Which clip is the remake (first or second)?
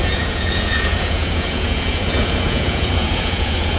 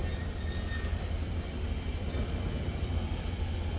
first